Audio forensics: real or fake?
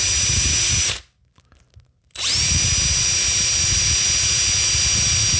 real